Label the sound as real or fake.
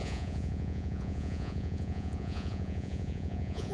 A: fake